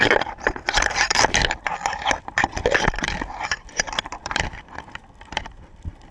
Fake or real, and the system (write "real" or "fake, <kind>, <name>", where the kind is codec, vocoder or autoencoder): fake, vocoder, BigVGAN v2